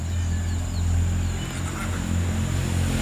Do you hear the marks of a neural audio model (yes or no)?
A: no